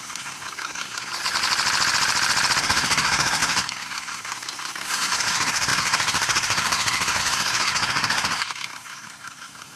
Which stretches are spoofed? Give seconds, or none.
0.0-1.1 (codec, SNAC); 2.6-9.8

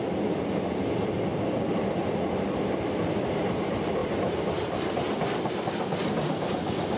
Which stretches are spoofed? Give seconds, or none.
4.0-5.6 (vocoder, BigVGAN v2)

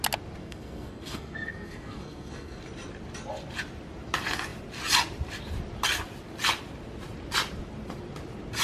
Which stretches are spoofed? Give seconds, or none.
0.4-2.6 (codec, SNAC)

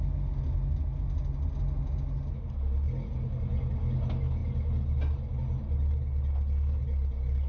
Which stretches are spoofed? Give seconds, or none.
none

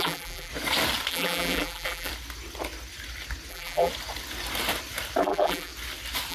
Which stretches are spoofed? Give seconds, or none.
0.0-0.5 (vocoder, BigVGAN v2); 1.1-2.1; 3.5-3.9; 5.2-5.7

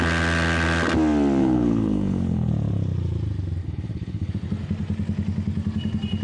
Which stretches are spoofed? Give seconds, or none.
1.4-2.5 (codec, HILCodec); 3.6-4.3

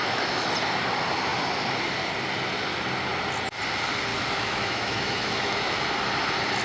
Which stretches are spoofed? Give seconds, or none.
0.0-0.5 (autoencoder, DAC-VAE); 4.1-5.8